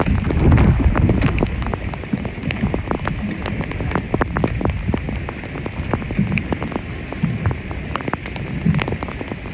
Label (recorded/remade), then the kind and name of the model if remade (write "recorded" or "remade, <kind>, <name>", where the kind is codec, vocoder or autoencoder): recorded